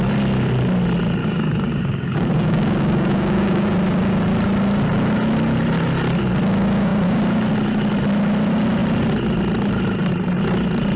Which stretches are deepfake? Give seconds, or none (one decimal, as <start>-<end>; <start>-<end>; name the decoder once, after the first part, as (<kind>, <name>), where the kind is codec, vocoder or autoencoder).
1.2-3.7 (codec, DAC)